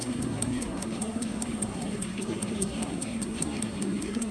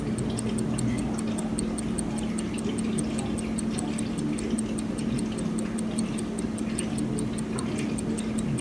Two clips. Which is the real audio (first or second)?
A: second